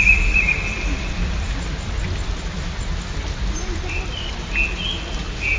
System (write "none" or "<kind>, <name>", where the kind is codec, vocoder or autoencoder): none